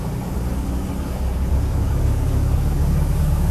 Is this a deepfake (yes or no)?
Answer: yes